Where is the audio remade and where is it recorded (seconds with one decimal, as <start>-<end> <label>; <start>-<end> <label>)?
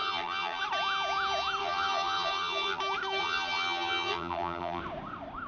0.0-0.6 remade; 0.6-1.6 recorded; 1.6-2.8 remade; 2.8-3.2 recorded; 3.2-4.8 remade; 4.8-5.5 recorded